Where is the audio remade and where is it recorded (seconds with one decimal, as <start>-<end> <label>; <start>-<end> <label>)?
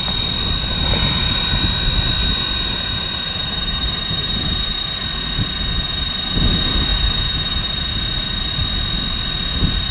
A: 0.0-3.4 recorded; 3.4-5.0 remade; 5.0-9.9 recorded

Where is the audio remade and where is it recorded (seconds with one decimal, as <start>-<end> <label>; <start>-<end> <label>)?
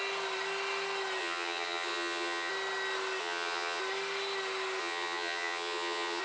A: 0.0-1.2 recorded; 1.2-2.5 remade; 2.5-3.2 recorded; 3.2-3.8 remade; 3.8-4.8 recorded; 4.8-6.2 remade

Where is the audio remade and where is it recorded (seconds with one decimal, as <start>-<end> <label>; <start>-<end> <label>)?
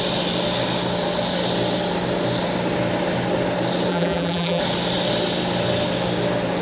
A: 0.0-3.9 recorded; 3.9-4.6 remade; 4.6-6.6 recorded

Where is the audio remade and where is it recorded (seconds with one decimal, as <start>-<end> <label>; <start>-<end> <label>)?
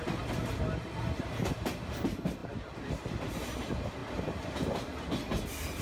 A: 0.0-5.8 recorded